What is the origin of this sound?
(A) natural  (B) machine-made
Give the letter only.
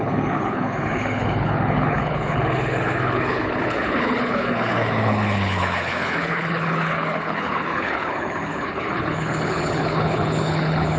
B